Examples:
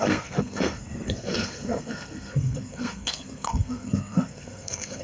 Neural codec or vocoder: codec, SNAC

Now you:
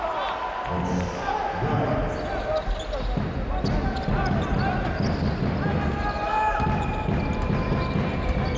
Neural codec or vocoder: none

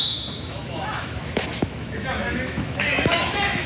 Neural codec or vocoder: autoencoder, DAC-VAE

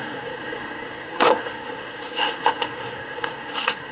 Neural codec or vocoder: codec, SNAC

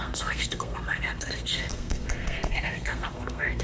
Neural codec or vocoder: codec, SNAC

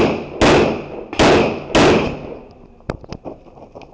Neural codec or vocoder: none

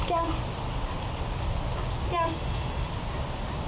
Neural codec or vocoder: none